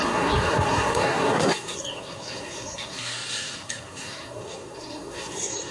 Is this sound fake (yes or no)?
yes